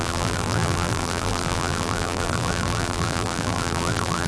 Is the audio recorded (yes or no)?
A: no